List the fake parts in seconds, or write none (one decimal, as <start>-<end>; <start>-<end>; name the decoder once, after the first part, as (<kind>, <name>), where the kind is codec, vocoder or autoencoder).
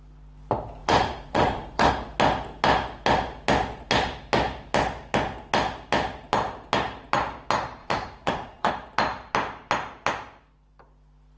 0.8-1.9 (vocoder, Vocos); 7.8-8.7